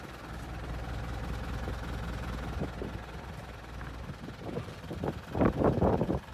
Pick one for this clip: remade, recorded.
recorded